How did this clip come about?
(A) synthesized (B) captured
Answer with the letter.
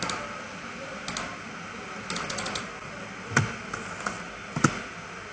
B